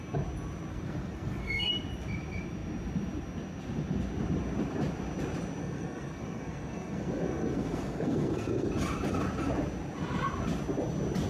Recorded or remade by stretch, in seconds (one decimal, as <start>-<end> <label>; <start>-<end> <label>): 0.0-0.7 recorded; 0.7-1.7 remade; 1.7-5.6 recorded; 5.6-8.7 remade; 8.7-11.3 recorded